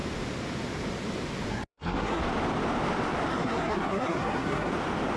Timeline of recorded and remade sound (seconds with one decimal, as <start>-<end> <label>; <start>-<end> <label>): 0.0-1.5 recorded; 1.5-2.2 remade; 2.2-3.3 recorded; 3.3-4.7 remade; 4.7-5.2 recorded